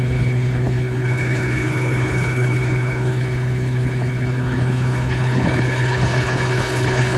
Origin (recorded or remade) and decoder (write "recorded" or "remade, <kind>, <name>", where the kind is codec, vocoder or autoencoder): remade, codec, HILCodec